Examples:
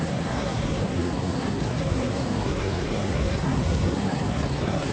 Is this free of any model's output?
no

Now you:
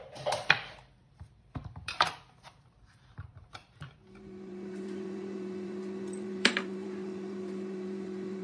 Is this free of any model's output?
no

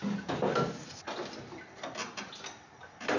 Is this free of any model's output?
yes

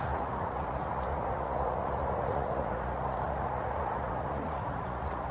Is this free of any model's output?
no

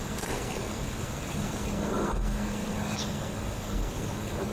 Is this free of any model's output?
no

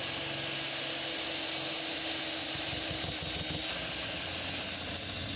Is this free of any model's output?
yes